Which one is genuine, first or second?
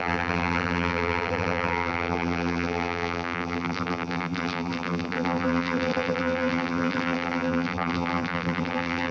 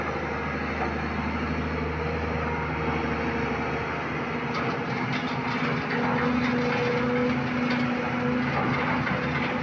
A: second